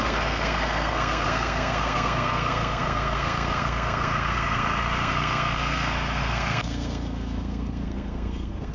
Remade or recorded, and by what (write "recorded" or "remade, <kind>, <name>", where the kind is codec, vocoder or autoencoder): remade, codec, SNAC